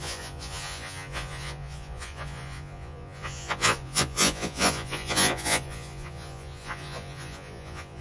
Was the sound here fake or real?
fake